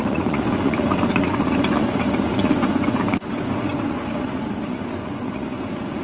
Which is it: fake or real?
fake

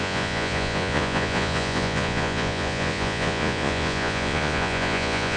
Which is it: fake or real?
fake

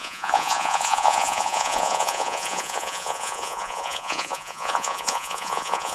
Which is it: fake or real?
fake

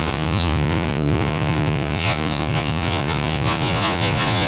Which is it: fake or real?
fake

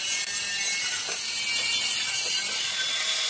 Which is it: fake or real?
real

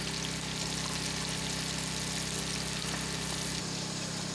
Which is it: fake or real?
real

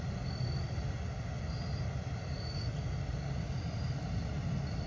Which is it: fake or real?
real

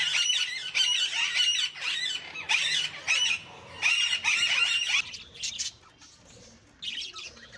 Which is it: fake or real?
real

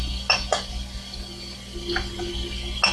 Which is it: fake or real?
real